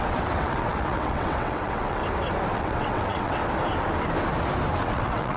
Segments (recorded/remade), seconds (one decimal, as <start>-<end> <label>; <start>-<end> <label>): 0.0-2.0 remade; 2.0-2.5 recorded; 2.5-3.4 remade; 3.4-4.8 recorded; 4.8-5.4 remade